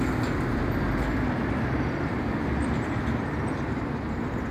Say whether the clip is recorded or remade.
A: recorded